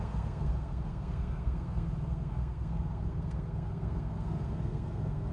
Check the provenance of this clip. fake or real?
fake